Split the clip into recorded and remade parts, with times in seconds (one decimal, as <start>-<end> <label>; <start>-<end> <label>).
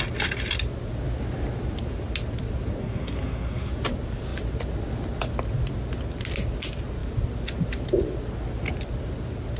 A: 0.0-2.8 recorded; 2.8-3.7 remade; 3.7-9.6 recorded